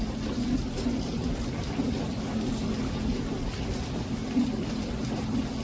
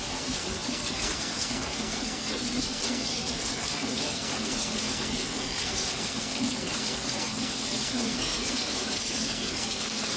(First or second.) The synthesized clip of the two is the second